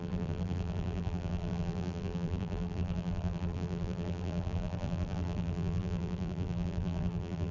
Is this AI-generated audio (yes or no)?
yes